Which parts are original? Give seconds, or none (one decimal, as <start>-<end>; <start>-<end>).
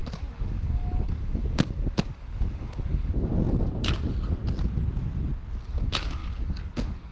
3.3-5.6